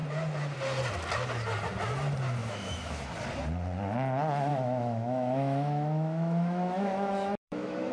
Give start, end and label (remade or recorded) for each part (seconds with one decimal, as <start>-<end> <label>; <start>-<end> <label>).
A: 0.0-2.4 recorded; 2.4-3.1 remade; 3.1-4.5 recorded; 4.5-7.9 remade